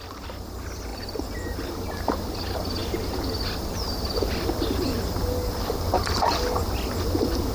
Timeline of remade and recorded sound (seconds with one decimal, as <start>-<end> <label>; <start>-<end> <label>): 0.0-0.9 recorded; 0.9-1.7 remade; 1.7-7.5 recorded